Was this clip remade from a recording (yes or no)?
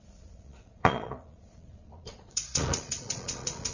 yes